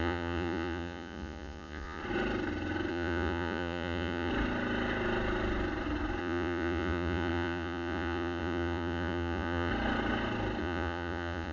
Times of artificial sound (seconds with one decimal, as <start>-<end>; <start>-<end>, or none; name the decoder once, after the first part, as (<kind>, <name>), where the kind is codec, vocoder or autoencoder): 0.0-2.0 (vocoder, Vocos); 2.9-4.3; 6.2-9.7; 10.6-11.5